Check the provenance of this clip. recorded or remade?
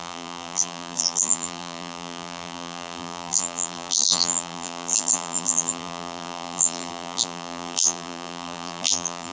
remade